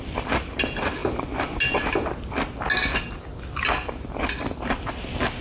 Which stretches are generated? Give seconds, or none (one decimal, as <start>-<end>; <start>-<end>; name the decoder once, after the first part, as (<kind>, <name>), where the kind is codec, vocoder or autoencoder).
none